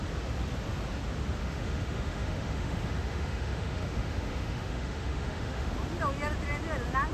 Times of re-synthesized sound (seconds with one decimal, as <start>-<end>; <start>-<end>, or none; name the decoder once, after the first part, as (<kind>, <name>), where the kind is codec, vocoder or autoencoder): 1.4-5.7 (autoencoder, DAC-VAE)